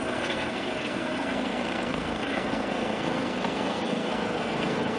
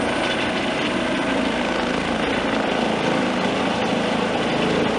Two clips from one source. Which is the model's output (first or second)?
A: first